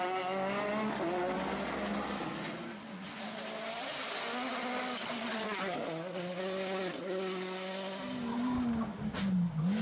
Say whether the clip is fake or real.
real